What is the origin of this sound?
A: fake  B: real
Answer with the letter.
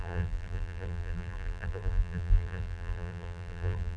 A